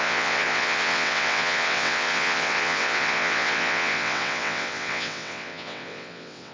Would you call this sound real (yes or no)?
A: no